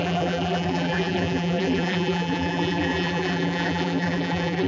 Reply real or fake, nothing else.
fake